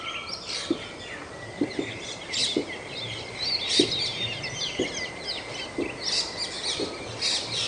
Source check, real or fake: real